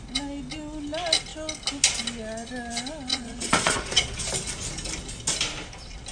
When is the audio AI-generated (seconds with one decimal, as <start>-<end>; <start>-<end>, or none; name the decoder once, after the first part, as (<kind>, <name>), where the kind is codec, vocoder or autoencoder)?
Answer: 3.1-4.2 (vocoder, Vocos)